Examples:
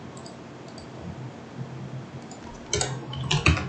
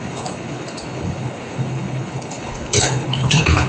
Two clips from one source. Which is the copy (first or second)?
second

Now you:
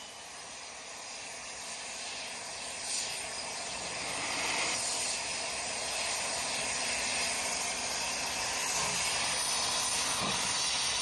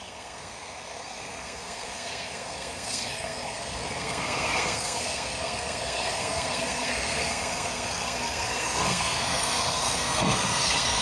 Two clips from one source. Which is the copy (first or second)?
second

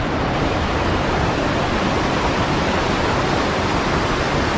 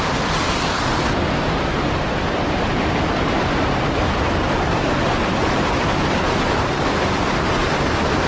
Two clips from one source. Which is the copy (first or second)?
first